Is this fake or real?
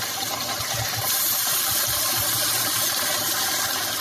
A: real